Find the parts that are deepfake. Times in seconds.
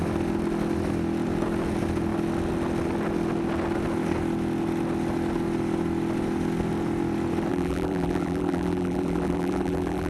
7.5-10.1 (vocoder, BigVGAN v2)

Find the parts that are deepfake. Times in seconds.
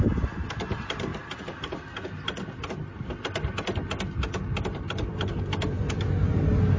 none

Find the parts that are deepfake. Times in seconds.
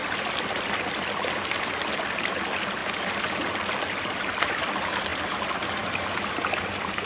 0.0-1.7 (vocoder, BigVGAN v2); 5.1-5.8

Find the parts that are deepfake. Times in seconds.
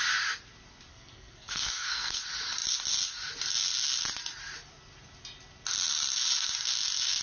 0.9-2.2 (codec, SNAC)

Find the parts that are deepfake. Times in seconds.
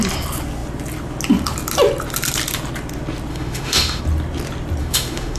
3.3-4.0 (autoencoder, DAC-VAE); 4.8-5.4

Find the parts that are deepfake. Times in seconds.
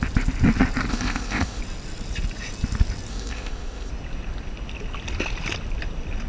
0.9-1.6 (codec, ZipCodec); 3.1-3.9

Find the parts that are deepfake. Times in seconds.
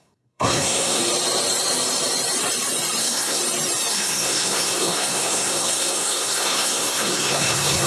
0.0-1.0 (codec, SNAC); 3.0-3.4; 3.9-7.9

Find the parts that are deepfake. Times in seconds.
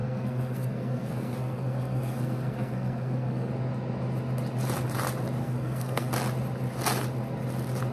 0.0-3.5 (codec, SNAC); 5.4-6.1